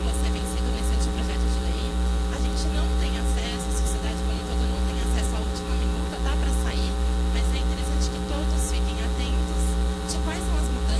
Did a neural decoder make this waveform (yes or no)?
yes